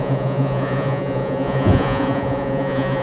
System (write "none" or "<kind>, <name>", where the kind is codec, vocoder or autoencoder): vocoder, Vocos